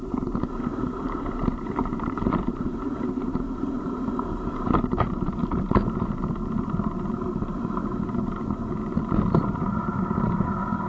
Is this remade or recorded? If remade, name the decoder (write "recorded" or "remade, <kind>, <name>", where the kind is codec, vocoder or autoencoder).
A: remade, vocoder, BigVGAN v2